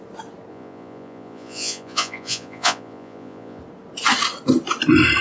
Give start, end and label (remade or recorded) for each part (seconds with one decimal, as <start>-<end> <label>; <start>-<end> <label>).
0.0-0.5 recorded; 0.5-3.6 remade; 3.6-5.2 recorded